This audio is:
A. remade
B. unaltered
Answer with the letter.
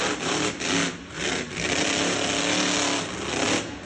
B